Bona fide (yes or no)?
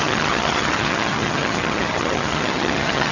no